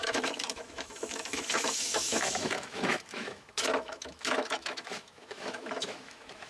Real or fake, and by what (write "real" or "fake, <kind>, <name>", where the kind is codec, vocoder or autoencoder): fake, autoencoder, DAC-VAE